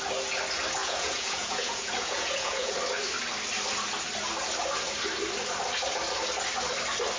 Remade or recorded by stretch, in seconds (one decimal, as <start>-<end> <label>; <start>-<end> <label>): 0.0-0.8 recorded; 0.8-2.7 remade; 2.7-7.2 recorded